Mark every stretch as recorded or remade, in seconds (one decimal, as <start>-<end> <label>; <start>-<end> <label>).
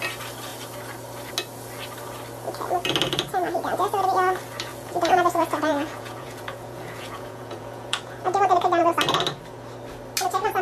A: 0.0-4.7 recorded; 4.7-8.9 remade; 8.9-10.6 recorded